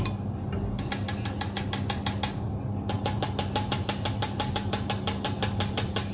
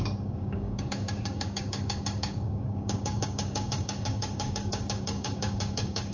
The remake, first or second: second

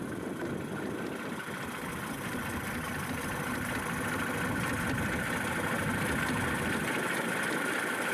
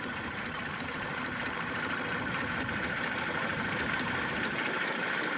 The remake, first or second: second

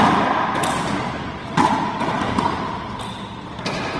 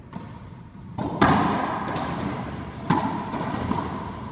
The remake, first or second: second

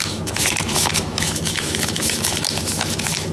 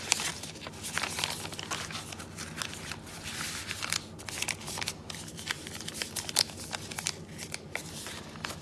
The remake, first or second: first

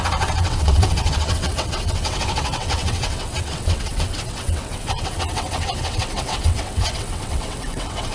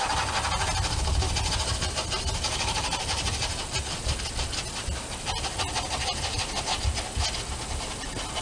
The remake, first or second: first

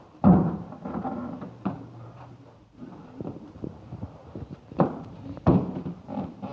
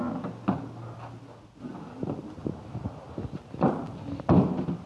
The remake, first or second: first